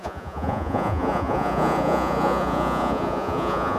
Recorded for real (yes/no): no